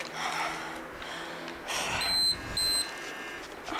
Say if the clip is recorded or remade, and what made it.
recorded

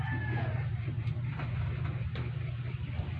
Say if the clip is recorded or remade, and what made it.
recorded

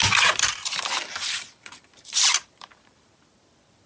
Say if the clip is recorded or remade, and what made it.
remade, vocoder, BigVGAN v2